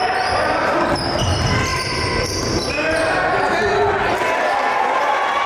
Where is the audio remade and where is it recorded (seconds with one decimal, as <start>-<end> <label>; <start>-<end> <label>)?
0.0-5.5 recorded